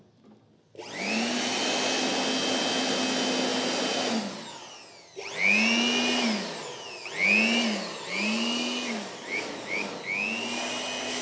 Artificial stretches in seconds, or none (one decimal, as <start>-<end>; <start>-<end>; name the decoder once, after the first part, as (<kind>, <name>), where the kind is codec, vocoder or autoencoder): none

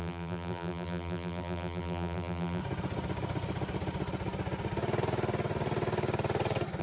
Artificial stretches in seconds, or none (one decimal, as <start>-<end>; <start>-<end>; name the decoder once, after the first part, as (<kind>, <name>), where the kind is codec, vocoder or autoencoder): 0.0-2.6 (vocoder, BigVGAN v2)